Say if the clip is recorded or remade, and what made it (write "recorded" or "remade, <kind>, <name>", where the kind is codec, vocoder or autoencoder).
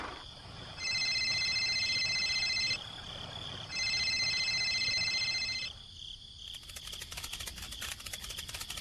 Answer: remade, vocoder, BigVGAN v2